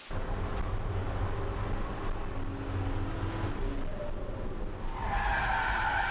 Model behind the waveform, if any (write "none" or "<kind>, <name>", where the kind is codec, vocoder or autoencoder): none